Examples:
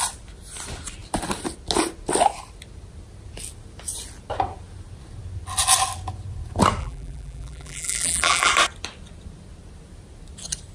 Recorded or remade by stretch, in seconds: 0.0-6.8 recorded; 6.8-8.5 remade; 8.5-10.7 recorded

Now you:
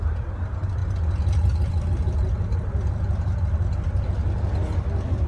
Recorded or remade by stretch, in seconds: 0.0-5.3 remade

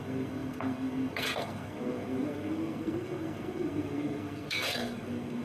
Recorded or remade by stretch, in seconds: 0.0-5.4 remade

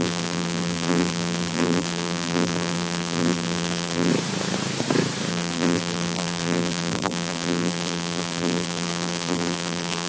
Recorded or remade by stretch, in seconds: 0.0-4.1 remade; 4.1-5.3 recorded; 5.3-10.1 remade

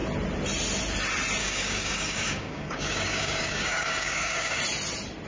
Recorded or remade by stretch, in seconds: 0.0-1.4 recorded; 1.4-4.6 remade; 4.6-5.3 recorded

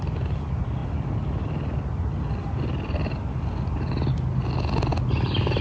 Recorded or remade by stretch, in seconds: 0.0-5.6 recorded

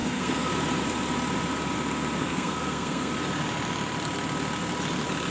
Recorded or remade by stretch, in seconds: 0.0-0.5 remade; 0.5-2.2 recorded; 2.2-3.1 remade; 3.1-5.3 recorded

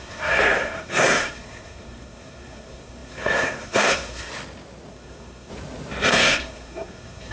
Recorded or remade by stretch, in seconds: 0.0-4.3 remade; 4.3-4.9 recorded; 4.9-5.5 remade; 5.5-6.1 recorded; 6.1-7.3 remade